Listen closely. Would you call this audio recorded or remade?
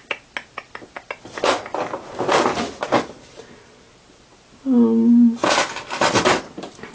recorded